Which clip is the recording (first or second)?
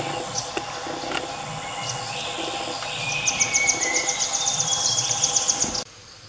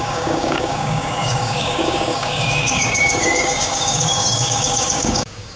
first